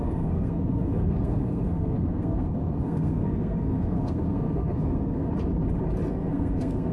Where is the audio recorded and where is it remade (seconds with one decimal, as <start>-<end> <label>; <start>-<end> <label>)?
0.0-5.3 remade; 5.3-6.1 recorded; 6.1-6.9 remade